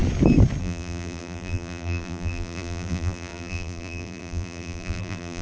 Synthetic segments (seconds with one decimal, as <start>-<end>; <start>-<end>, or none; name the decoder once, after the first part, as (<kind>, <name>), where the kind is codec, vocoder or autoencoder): 0.6-5.4 (vocoder, BigVGAN v2)